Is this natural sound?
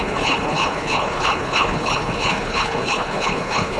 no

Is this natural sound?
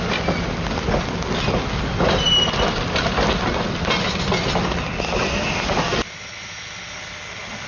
yes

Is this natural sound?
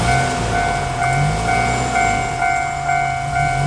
yes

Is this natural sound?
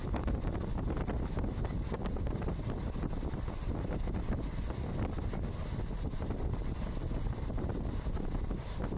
yes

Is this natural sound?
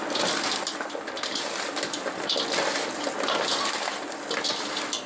yes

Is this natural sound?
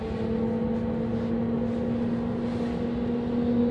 yes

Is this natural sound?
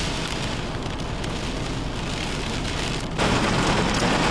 yes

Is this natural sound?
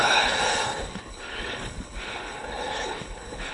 no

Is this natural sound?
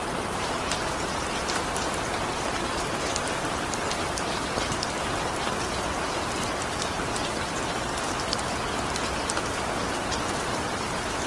yes